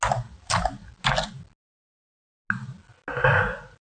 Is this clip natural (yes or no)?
yes